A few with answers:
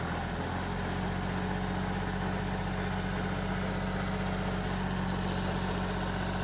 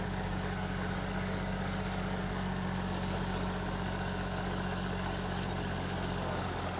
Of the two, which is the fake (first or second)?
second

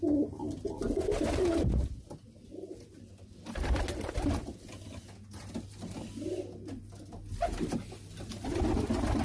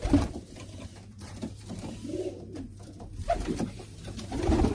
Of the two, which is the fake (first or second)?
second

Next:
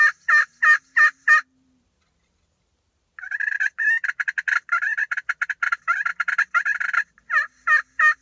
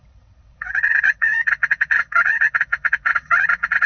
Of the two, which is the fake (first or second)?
second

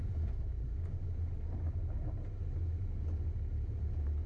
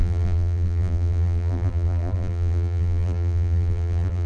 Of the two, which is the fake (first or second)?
second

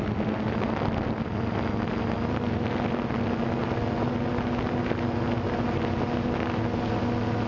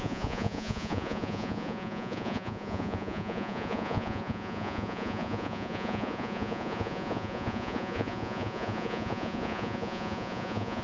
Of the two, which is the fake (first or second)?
second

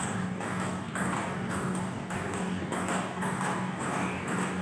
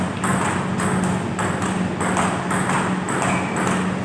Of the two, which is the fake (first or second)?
first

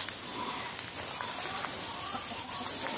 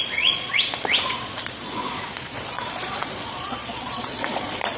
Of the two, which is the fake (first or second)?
second